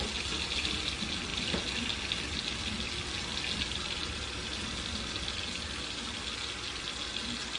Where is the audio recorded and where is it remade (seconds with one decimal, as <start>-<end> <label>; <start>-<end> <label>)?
0.0-7.6 recorded